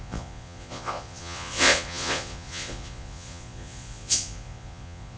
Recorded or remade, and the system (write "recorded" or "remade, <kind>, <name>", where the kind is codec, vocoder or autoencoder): remade, vocoder, Vocos